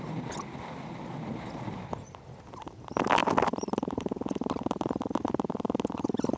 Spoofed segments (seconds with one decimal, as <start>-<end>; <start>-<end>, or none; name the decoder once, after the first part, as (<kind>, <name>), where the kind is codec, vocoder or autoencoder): none